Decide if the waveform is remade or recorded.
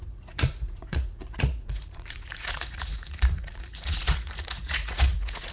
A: remade